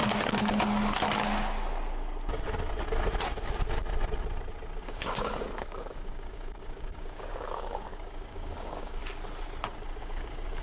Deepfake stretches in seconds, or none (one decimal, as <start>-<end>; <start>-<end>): 4.8-9.0; 10.0-10.6